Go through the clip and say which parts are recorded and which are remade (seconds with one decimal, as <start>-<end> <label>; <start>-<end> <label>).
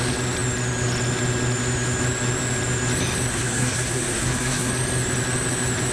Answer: 0.0-3.3 recorded; 3.3-4.7 remade; 4.7-5.9 recorded